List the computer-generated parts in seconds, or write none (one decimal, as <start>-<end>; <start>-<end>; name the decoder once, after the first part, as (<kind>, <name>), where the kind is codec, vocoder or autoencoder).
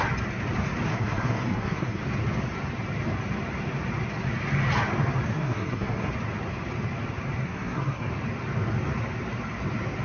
0.9-2.0 (codec, SNAC); 5.3-6.1; 7.4-8.1